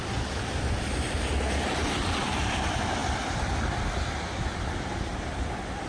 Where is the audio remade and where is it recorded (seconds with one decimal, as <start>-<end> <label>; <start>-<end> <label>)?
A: 0.0-5.9 recorded